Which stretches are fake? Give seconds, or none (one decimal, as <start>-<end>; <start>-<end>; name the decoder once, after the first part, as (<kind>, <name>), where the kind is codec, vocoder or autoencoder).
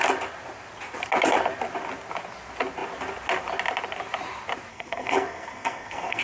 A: 4.7-6.2 (codec, SNAC)